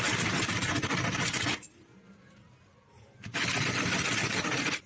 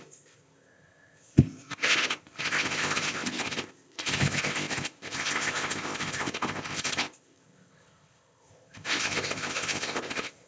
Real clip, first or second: first